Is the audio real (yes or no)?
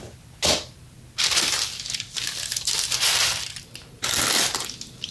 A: yes